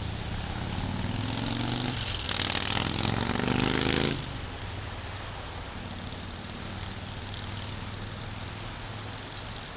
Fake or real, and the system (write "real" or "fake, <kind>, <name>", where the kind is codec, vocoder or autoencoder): real